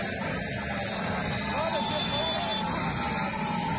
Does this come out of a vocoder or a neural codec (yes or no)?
no